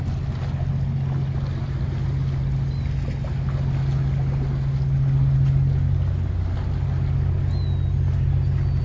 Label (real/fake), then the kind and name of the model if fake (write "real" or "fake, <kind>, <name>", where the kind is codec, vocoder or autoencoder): real